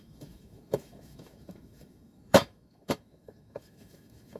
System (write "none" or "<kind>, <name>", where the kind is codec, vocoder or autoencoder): autoencoder, DAC-VAE